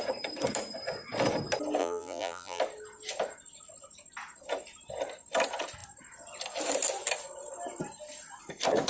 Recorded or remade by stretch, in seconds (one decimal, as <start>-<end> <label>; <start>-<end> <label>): 0.0-1.8 recorded; 1.8-2.6 remade; 2.6-8.9 recorded

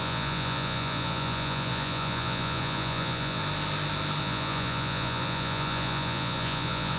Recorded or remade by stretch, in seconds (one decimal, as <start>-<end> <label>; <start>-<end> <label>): 0.0-3.4 remade; 3.4-4.2 recorded; 4.2-7.0 remade

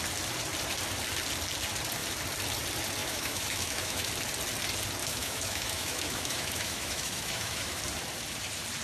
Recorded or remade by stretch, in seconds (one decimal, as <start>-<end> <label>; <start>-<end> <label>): 0.0-3.0 recorded; 3.0-4.1 remade; 4.1-5.0 recorded; 5.0-7.8 remade; 7.8-8.8 recorded

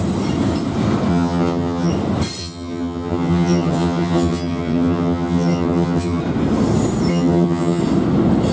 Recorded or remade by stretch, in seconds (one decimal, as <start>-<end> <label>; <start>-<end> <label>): 0.0-1.1 recorded; 1.1-1.9 remade; 1.9-2.4 recorded; 2.4-6.2 remade; 6.2-7.1 recorded; 7.1-7.8 remade; 7.8-8.5 recorded

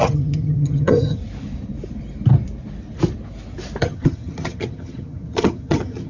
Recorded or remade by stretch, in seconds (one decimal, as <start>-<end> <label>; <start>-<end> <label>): 0.0-1.2 remade; 1.2-3.8 recorded; 3.8-6.1 remade

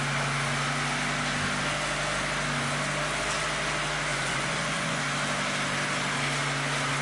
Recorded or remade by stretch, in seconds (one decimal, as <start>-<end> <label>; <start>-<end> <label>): 0.0-4.1 recorded; 4.1-5.0 remade; 5.0-7.0 recorded

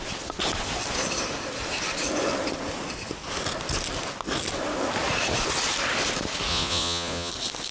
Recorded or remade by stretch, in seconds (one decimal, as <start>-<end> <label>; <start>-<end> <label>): 0.0-6.5 recorded; 6.5-7.3 remade; 7.3-7.7 recorded